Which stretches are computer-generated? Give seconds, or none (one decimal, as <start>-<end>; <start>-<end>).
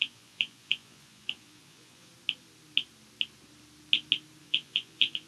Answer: 0.0-2.1; 4.4-5.3